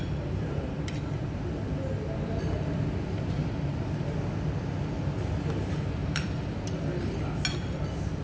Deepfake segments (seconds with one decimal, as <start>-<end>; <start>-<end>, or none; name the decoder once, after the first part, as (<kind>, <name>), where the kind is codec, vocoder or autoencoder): 6.0-6.5 (vocoder, BigVGAN v2)

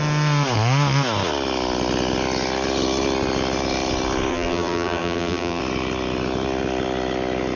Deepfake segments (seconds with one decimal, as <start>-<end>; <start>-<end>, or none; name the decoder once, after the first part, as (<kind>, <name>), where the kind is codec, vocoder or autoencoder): 4.3-5.6 (vocoder, BigVGAN v2)